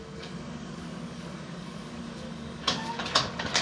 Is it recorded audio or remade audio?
remade